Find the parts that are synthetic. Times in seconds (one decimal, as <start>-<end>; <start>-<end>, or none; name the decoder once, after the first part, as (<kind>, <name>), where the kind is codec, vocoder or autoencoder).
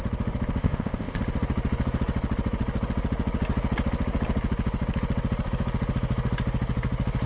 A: 0.6-1.2 (codec, ZipCodec)